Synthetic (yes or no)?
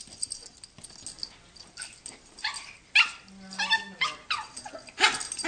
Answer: no